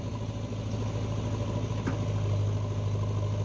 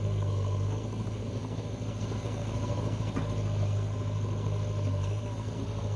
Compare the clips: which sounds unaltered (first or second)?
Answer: first